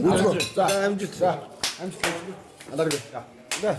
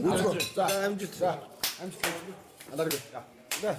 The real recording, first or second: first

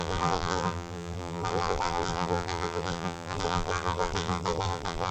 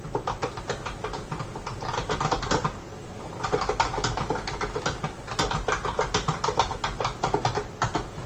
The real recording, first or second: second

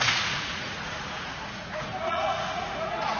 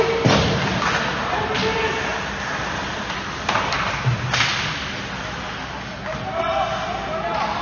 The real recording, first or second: second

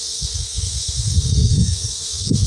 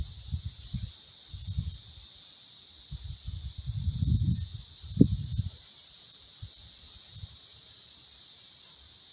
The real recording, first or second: second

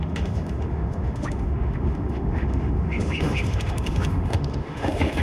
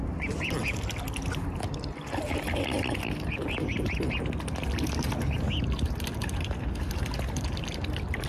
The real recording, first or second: second